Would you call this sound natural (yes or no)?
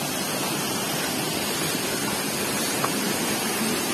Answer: yes